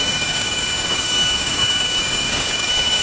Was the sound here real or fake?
fake